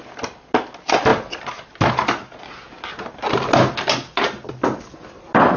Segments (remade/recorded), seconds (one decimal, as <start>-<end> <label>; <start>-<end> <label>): 0.0-5.6 recorded